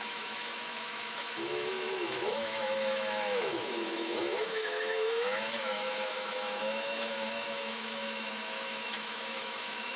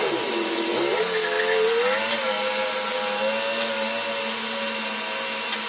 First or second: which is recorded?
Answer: second